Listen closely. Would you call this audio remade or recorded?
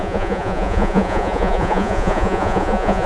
remade